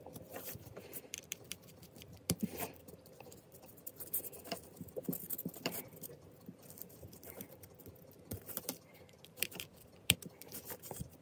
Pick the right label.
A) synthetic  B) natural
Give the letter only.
A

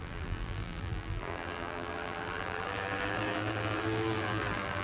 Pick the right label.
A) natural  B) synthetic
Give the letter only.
B